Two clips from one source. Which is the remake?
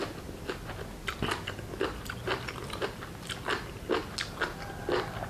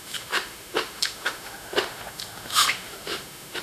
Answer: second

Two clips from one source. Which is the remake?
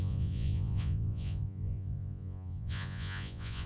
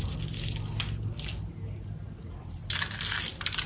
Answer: first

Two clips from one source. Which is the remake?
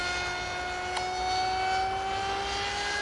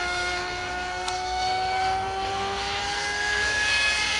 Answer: second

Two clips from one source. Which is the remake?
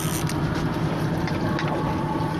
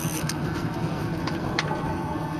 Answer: second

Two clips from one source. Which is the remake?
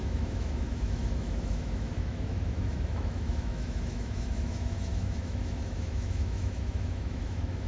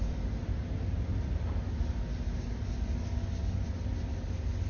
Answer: first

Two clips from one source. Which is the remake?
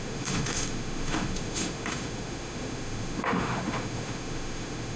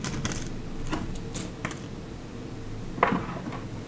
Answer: first